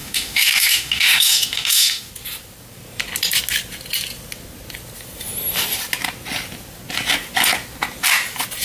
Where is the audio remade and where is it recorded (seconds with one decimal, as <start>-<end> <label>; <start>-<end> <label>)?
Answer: 0.0-2.1 remade; 2.1-8.6 recorded